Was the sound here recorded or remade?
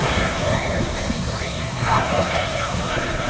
remade